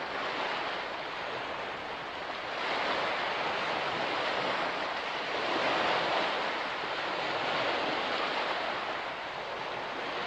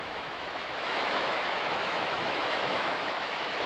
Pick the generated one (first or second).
second